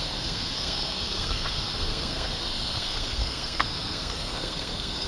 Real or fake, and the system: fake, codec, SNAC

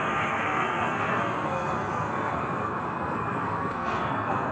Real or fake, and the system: fake, codec, SNAC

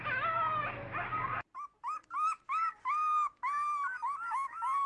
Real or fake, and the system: real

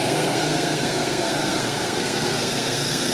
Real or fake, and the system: fake, codec, SNAC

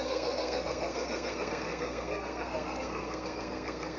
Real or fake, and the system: fake, codec, SNAC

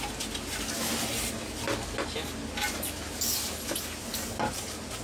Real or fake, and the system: real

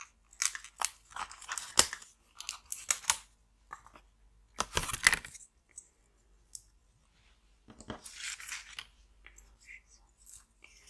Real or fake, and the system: real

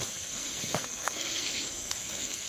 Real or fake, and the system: fake, codec, SNAC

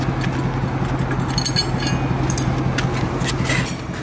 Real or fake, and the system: real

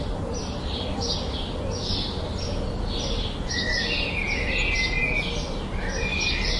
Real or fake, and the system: real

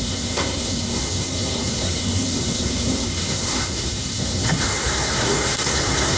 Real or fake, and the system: fake, codec, SNAC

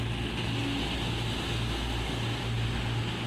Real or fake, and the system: real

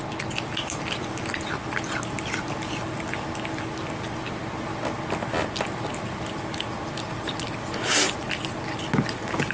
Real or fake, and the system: real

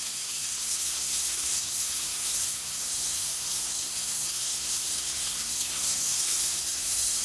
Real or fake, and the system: fake, codec, SNAC